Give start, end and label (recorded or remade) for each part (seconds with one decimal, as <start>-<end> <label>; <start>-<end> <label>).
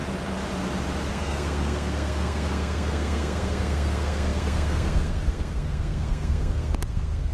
0.0-1.1 recorded; 1.1-7.3 remade